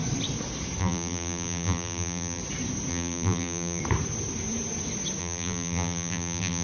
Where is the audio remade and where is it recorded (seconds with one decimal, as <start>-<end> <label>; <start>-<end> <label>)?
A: 0.0-0.8 recorded; 0.8-2.4 remade; 2.4-2.9 recorded; 2.9-3.8 remade; 3.8-5.2 recorded; 5.2-6.6 remade